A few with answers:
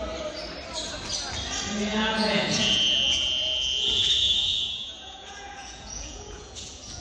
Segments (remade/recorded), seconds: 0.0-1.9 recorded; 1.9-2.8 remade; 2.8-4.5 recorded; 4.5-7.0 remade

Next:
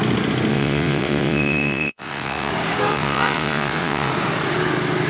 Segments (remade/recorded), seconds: 0.0-0.5 recorded; 0.5-2.5 remade; 2.5-2.9 recorded; 2.9-4.1 remade; 4.1-5.1 recorded